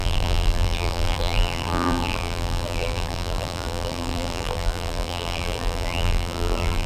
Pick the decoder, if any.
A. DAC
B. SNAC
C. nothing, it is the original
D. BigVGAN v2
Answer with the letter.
D